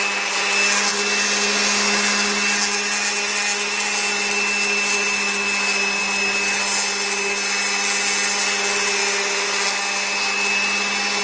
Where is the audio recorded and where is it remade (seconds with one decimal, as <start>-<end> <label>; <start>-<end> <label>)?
0.0-11.2 recorded